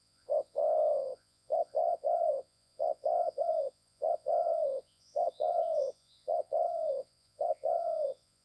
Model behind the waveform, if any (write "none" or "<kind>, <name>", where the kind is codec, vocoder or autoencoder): vocoder, Vocos